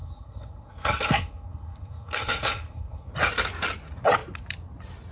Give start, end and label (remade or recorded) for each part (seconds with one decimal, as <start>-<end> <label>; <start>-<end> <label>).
0.0-3.1 remade; 3.1-5.1 recorded